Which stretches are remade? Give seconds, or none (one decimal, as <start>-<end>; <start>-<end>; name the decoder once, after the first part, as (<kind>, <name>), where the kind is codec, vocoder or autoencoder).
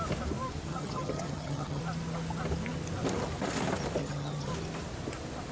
0.7-1.8 (vocoder, HiFi-GAN); 4.0-4.5